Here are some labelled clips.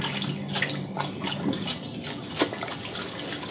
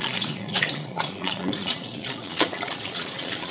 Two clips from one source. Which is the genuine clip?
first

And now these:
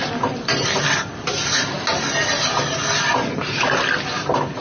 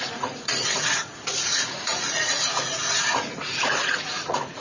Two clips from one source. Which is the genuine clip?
first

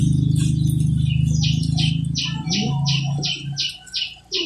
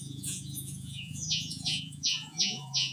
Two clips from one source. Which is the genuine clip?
first